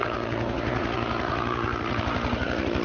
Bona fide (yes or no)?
no